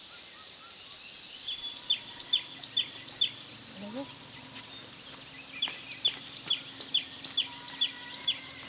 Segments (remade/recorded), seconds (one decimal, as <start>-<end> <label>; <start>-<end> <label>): 0.0-8.7 recorded